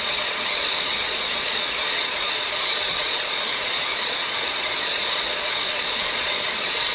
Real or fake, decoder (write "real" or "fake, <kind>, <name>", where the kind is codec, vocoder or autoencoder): fake, vocoder, Vocos